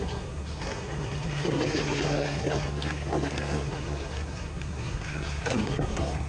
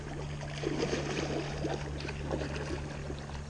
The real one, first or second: second